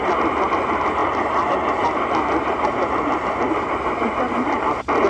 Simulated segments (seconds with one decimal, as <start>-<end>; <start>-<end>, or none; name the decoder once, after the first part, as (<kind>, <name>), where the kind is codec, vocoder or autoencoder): none